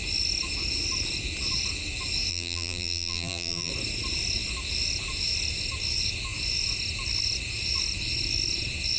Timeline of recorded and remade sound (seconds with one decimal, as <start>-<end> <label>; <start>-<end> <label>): 0.0-2.3 recorded; 2.3-3.7 remade; 3.7-9.0 recorded